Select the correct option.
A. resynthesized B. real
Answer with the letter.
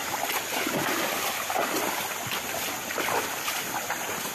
B